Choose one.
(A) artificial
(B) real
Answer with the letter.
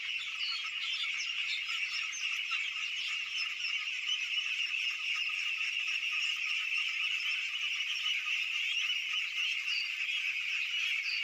B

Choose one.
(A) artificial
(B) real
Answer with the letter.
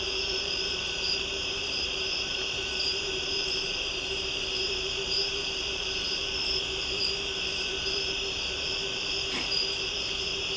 A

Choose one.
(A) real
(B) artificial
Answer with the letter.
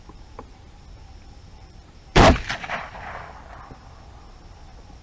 B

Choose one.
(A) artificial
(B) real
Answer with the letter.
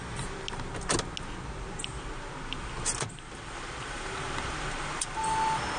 B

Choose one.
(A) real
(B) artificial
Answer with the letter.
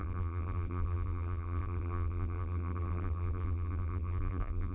B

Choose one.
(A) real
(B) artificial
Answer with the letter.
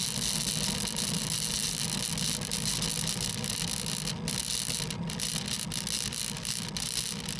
A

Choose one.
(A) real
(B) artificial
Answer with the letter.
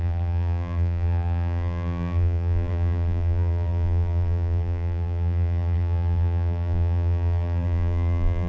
B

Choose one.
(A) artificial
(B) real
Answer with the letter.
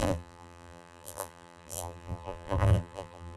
A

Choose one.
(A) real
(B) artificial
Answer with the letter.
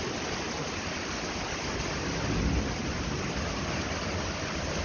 A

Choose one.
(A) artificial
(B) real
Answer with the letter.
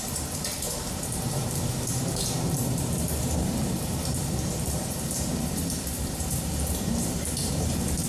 A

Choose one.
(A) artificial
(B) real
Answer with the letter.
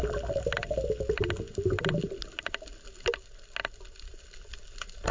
B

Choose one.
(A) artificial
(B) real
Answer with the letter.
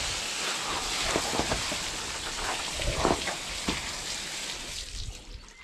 A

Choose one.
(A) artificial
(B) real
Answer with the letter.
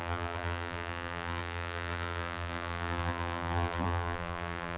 A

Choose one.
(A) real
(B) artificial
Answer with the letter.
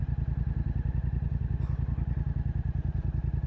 A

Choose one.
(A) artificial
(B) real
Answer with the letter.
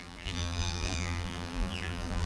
A